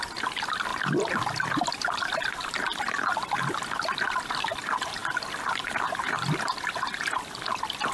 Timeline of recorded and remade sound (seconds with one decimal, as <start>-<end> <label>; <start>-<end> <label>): 0.0-7.9 recorded